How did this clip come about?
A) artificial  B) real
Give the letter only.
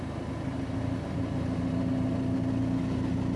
B